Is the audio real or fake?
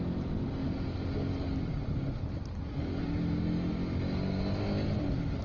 real